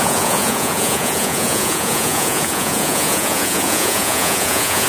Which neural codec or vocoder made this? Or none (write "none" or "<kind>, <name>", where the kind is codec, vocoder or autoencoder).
vocoder, Vocos